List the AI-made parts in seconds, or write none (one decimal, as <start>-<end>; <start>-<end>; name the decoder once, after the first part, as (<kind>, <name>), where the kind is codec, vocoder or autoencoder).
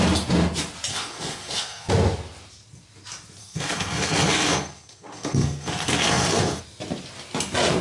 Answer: 0.9-1.9 (codec, SNAC); 3.4-6.6